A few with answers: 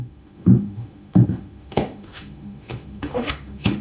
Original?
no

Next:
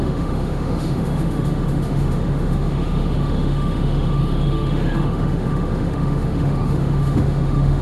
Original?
no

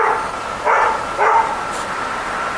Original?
yes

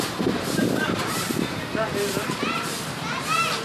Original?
yes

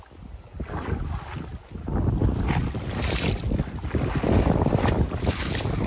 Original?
yes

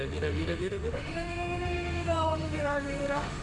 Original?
no